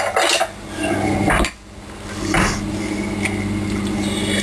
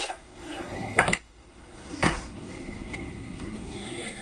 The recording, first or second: first